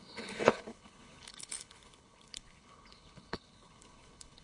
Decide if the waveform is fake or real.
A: fake